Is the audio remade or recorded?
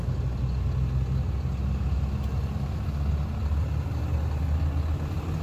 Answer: recorded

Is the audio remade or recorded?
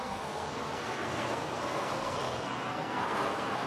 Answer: remade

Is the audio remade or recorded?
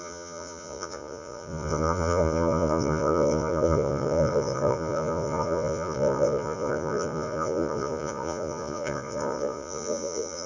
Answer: remade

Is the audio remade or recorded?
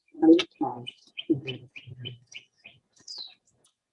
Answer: remade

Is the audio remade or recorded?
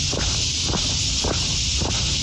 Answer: recorded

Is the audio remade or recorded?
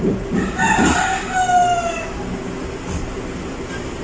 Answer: recorded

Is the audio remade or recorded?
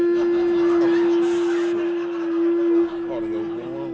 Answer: recorded